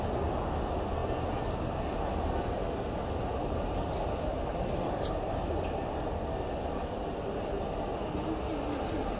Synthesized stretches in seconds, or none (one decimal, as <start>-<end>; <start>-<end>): none